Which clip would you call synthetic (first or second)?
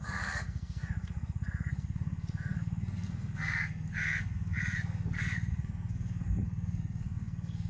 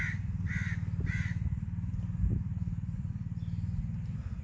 first